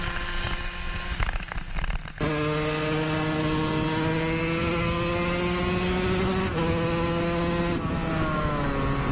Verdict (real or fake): real